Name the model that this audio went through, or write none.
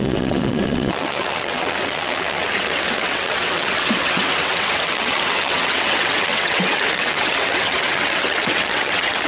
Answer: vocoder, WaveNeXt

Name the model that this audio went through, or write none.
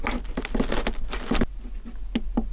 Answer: none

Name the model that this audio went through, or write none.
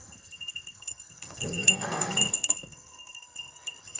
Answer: codec, SNAC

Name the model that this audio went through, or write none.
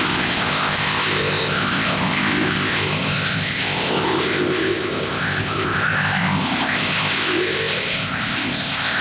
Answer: codec, ZipCodec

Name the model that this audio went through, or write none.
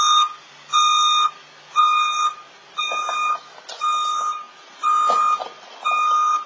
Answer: none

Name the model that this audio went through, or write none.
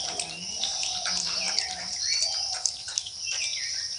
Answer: none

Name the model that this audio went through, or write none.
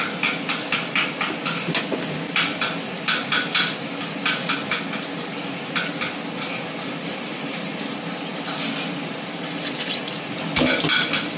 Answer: none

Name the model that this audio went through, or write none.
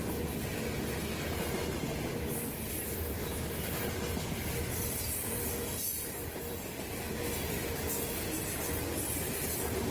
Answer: none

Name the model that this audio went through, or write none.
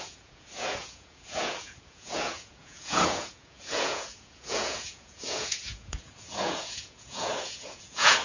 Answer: vocoder, Vocos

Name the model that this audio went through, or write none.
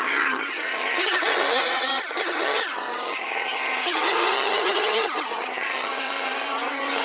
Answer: vocoder, HiFi-GAN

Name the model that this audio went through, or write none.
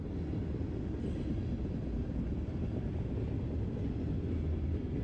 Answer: none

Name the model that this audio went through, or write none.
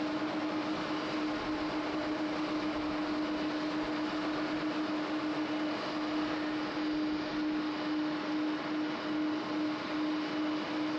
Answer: none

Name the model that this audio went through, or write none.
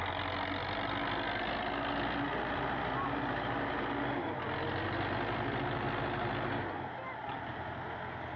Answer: none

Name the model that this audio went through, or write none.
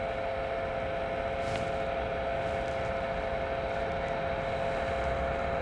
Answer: none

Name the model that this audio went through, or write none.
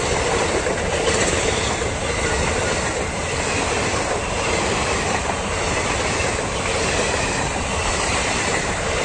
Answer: none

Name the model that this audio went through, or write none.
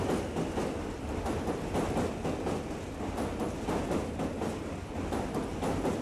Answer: none